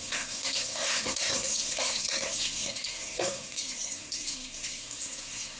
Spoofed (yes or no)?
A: yes